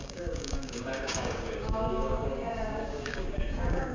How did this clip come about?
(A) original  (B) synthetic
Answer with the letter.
B